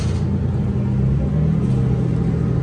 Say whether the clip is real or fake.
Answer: real